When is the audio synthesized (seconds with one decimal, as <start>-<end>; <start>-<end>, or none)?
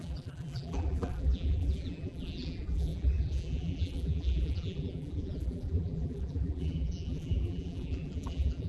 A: 0.0-8.7